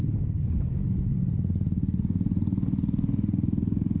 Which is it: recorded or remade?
recorded